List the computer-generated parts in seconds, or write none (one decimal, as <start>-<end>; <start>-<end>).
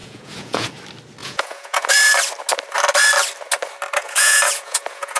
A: 0.0-0.7; 1.2-1.9; 4.0-5.2